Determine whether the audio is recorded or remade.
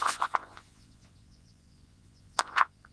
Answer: remade